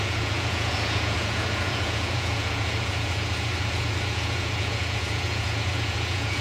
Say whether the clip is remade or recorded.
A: remade